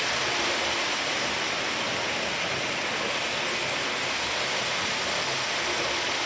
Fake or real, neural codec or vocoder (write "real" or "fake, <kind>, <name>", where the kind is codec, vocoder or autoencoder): real